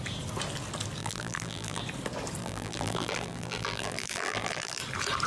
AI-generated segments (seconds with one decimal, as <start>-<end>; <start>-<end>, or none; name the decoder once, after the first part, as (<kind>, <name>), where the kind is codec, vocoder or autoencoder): 1.0-1.8 (vocoder, BigVGAN v2); 2.4-4.8